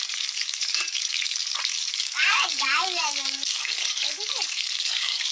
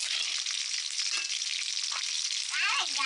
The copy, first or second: first